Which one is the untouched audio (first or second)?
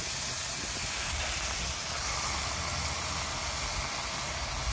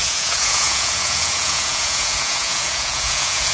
first